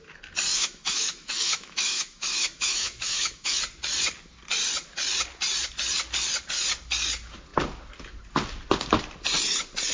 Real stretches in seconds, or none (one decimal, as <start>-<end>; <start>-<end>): 0.0-0.5; 3.6-9.9